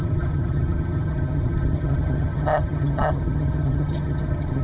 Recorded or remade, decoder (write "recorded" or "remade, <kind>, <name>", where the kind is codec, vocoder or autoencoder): remade, vocoder, HiFi-GAN